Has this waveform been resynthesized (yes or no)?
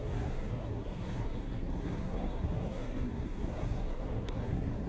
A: yes